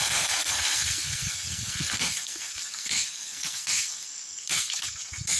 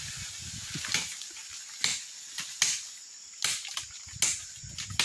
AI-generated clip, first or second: first